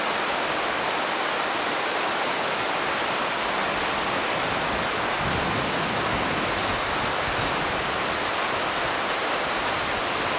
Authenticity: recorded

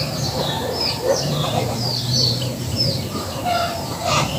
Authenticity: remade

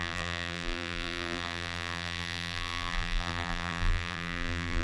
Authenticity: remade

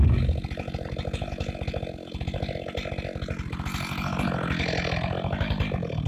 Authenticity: recorded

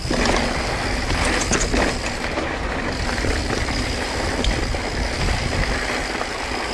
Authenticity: recorded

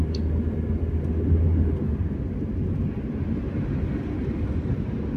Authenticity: recorded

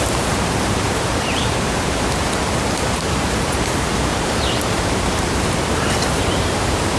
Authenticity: remade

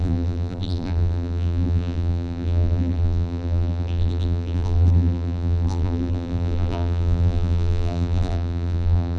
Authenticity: remade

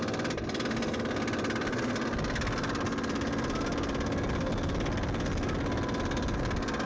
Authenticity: recorded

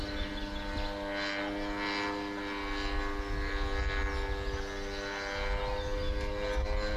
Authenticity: recorded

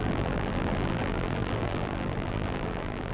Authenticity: remade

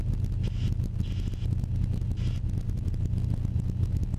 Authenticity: recorded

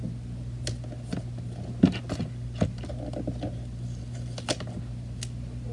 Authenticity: recorded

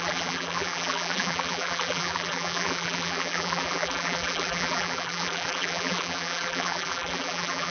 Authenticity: remade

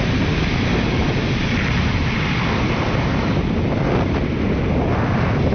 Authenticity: recorded